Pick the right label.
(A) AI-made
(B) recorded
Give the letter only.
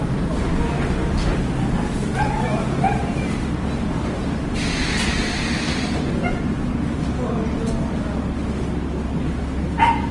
B